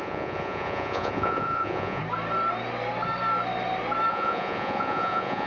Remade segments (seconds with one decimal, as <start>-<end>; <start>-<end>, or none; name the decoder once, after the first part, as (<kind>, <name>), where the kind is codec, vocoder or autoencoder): 0.0-2.0 (vocoder, Vocos); 4.1-5.5

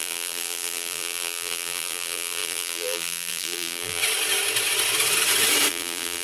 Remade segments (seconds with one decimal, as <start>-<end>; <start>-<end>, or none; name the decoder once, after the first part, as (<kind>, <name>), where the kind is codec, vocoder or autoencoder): 0.0-4.0 (vocoder, BigVGAN v2); 5.7-6.2

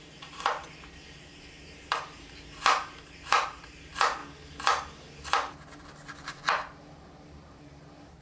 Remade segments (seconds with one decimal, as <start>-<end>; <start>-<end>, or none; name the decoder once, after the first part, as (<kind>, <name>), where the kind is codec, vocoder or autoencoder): 0.0-0.6 (vocoder, BigVGAN v2); 1.8-4.2; 5.8-8.2

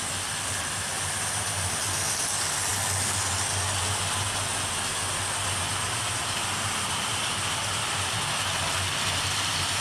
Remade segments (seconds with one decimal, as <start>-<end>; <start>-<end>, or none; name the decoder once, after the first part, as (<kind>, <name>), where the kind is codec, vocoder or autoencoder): none

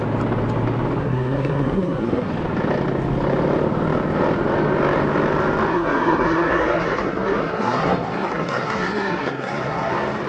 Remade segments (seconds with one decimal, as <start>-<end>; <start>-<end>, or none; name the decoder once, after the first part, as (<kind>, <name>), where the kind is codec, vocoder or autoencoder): 1.0-2.3 (codec, SNAC); 5.7-9.9